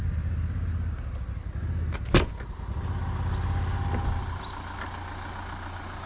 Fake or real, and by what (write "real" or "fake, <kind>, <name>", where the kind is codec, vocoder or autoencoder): real